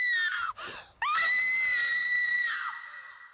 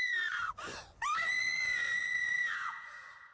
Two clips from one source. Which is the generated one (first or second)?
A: second